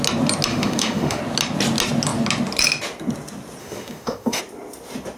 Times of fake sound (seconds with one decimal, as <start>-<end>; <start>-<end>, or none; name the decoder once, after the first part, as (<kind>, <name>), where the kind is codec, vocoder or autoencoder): 0.5-1.2 (autoencoder, DAC-VAE); 3.6-4.4